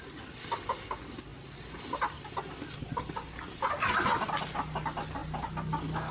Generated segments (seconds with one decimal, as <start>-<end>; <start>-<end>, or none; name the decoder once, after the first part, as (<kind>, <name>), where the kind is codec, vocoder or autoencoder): none